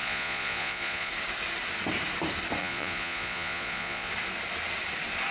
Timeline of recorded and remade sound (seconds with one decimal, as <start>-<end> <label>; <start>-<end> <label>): 0.0-1.1 remade; 1.1-2.6 recorded; 2.6-4.1 remade; 4.1-5.3 recorded